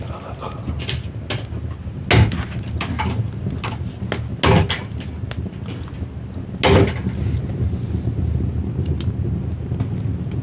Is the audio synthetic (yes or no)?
no